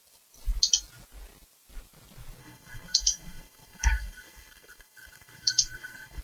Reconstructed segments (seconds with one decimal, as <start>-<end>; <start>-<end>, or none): 2.4-6.2